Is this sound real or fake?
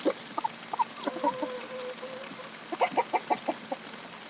fake